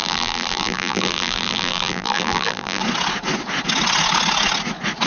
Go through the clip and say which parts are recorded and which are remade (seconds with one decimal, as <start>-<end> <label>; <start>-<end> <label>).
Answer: 0.0-2.8 remade; 2.8-5.1 recorded